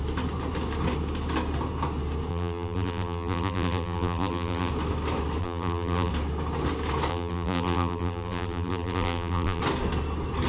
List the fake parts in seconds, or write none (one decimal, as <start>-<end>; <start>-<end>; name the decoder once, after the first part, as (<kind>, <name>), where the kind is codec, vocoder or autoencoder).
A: 2.3-4.7 (vocoder, BigVGAN v2); 5.4-6.1; 7.1-9.6